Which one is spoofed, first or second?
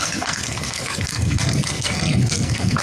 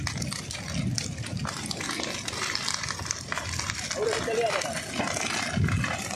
first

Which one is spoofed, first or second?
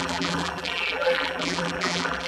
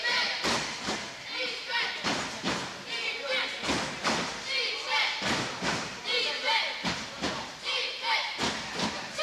first